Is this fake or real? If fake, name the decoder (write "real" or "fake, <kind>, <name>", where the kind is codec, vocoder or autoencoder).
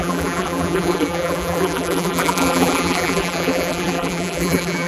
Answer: fake, vocoder, BigVGAN v2